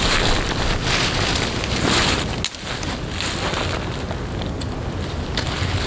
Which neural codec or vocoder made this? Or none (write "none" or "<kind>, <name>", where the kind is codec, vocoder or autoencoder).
none